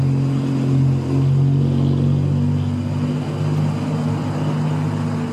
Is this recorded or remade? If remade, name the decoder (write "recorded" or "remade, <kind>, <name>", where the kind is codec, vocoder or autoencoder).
recorded